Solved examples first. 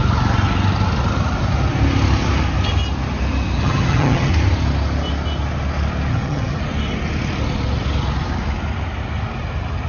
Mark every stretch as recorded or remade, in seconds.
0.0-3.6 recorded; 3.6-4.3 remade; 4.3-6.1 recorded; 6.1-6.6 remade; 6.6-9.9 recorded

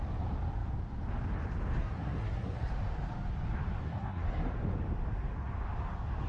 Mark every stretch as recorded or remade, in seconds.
0.0-1.8 recorded; 1.8-2.7 remade; 2.7-3.8 recorded; 3.8-4.5 remade; 4.5-6.3 recorded

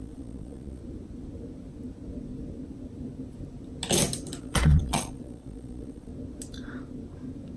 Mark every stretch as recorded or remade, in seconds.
0.0-0.8 remade; 0.8-4.4 recorded; 4.4-6.1 remade; 6.1-7.6 recorded

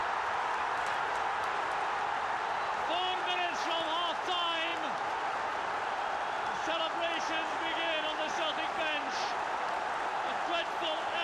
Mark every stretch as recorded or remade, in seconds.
0.0-11.2 recorded

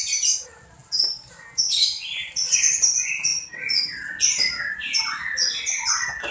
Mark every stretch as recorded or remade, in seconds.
0.0-6.3 remade